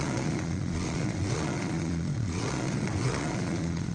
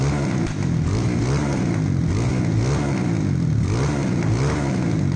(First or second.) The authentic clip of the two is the second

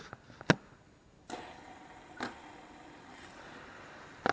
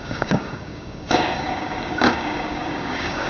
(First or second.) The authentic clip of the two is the first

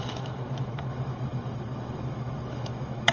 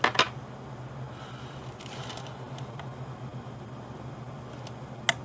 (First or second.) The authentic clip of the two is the second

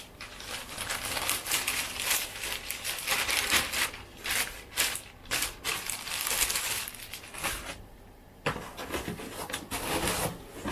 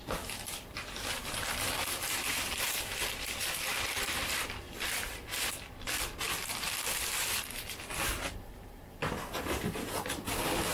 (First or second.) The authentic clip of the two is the first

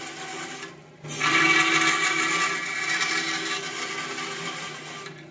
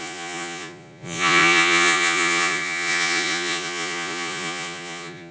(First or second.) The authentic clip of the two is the first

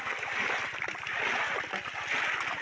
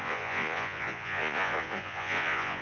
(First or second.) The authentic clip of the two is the first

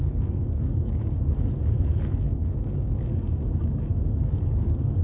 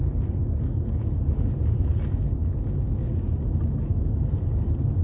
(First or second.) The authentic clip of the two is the second